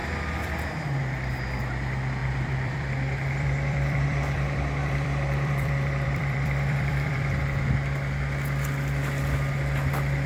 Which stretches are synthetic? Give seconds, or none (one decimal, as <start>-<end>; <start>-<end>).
2.2-7.4

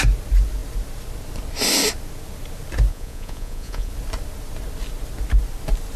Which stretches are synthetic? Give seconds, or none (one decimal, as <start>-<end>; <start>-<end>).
2.9-3.9